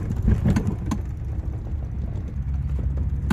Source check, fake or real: real